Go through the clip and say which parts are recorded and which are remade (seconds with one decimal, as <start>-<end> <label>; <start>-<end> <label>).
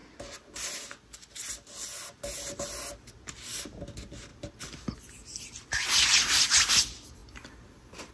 0.0-8.1 recorded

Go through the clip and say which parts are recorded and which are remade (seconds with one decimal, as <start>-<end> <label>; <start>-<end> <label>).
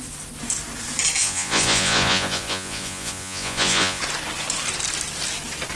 0.0-1.2 recorded; 1.2-4.0 remade; 4.0-5.8 recorded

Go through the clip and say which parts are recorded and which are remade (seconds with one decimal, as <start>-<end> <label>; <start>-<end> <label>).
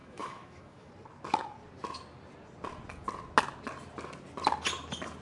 0.0-0.9 remade; 0.9-5.2 recorded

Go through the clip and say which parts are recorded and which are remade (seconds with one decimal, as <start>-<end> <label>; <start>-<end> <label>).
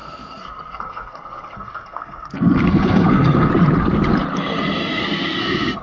0.0-3.5 remade; 3.5-4.8 recorded; 4.8-5.8 remade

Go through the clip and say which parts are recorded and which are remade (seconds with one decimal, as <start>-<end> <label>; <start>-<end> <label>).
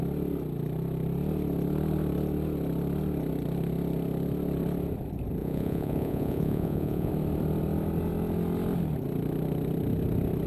0.0-5.4 recorded; 5.4-7.1 remade; 7.1-10.5 recorded